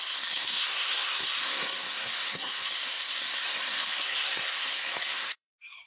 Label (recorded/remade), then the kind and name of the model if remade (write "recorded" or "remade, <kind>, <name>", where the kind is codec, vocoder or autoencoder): remade, codec, SNAC